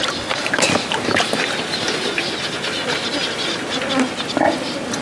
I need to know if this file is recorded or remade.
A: recorded